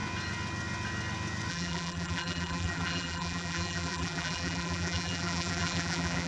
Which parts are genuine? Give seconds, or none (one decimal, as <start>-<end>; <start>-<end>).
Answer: 0.0-1.5